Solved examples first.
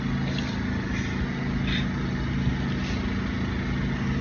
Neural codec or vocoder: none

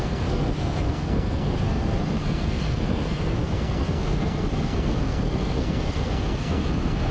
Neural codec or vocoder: codec, SNAC